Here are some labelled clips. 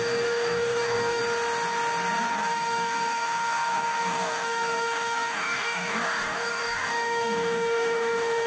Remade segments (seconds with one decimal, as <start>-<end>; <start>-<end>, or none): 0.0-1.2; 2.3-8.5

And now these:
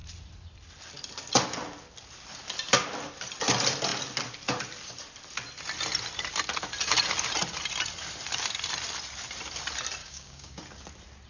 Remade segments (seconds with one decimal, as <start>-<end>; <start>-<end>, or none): 10.0-10.6

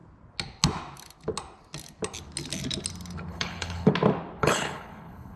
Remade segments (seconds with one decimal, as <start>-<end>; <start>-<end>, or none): 3.3-3.9; 4.4-5.4

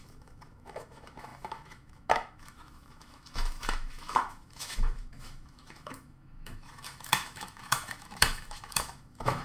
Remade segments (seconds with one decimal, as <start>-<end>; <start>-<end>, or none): 0.0-9.4